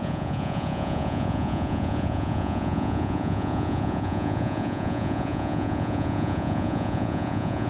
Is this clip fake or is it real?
fake